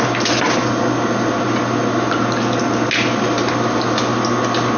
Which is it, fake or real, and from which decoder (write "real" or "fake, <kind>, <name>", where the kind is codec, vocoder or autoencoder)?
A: real